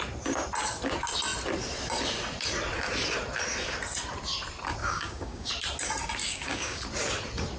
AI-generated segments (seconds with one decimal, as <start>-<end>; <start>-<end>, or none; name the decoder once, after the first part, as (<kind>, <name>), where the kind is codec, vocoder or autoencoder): 4.8-5.5 (codec, DAC); 6.2-6.8